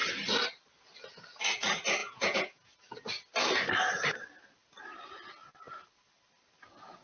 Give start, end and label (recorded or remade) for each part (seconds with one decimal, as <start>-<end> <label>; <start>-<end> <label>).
0.0-2.0 recorded; 2.0-2.7 remade; 2.7-7.0 recorded